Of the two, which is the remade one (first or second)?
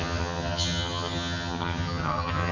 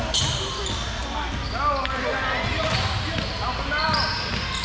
first